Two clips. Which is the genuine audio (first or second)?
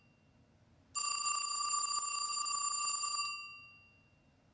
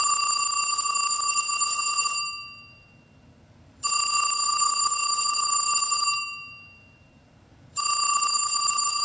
first